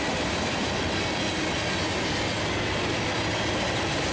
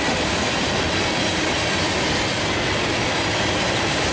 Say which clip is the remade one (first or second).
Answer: second